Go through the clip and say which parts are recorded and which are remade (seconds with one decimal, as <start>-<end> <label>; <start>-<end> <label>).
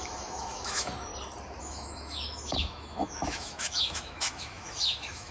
0.0-1.1 remade; 1.1-1.6 recorded; 1.6-5.3 remade